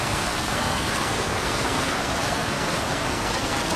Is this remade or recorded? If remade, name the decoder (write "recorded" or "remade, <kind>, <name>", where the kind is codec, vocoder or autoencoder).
remade, codec, SNAC